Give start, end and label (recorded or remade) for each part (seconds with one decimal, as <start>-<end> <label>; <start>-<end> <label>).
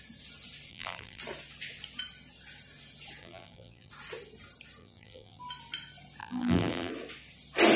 0.0-0.7 recorded; 0.7-1.2 remade; 1.2-3.2 recorded; 3.2-3.9 remade; 3.9-4.8 recorded; 4.8-5.4 remade; 5.4-6.2 recorded; 6.2-6.9 remade; 6.9-7.8 recorded